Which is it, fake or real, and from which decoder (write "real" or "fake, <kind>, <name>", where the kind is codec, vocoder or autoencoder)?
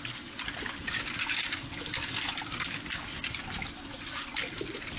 real